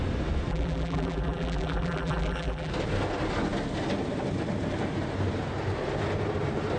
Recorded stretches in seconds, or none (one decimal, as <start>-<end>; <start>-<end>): 0.0-0.5; 2.7-6.8